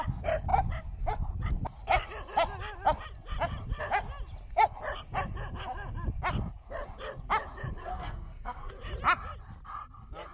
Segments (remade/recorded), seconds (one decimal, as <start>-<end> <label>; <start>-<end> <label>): 0.0-7.8 recorded; 7.8-8.7 remade; 8.7-10.3 recorded